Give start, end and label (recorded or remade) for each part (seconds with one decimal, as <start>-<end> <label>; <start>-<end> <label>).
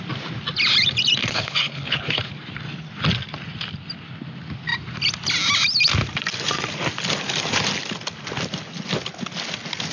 0.0-1.2 recorded; 1.2-2.3 remade; 2.3-9.9 recorded